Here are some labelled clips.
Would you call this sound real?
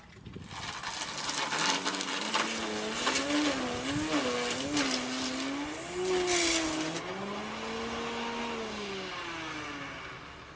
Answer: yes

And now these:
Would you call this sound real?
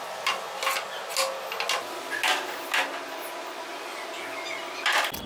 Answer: yes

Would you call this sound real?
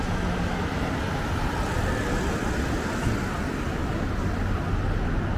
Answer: yes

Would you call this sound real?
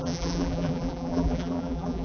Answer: no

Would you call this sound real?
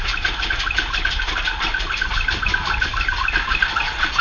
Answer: no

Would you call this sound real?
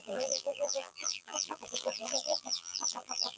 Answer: no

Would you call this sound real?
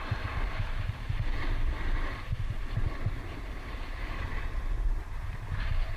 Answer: no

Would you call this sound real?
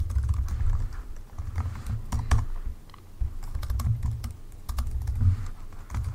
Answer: yes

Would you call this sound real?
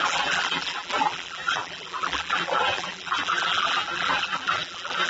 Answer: no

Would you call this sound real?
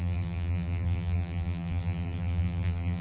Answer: no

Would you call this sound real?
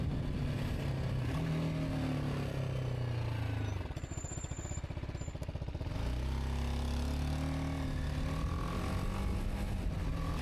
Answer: yes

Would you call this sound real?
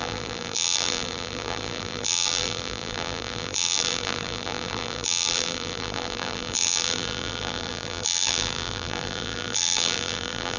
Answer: no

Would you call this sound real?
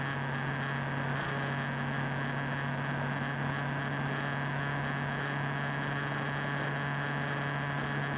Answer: yes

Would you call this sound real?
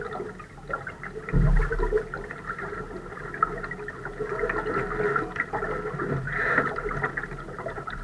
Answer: yes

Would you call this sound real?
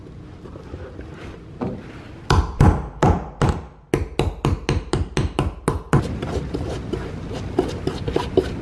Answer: yes